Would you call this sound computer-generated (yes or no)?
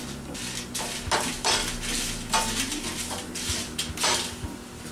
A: no